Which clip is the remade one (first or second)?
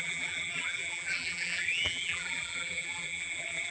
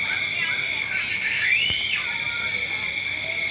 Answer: first